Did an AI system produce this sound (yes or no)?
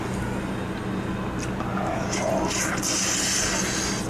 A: no